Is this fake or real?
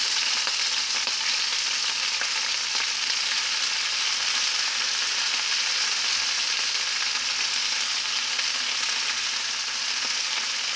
real